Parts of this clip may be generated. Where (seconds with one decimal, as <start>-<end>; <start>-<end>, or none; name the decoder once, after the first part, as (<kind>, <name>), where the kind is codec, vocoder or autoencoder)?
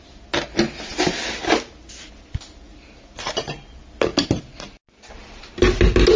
none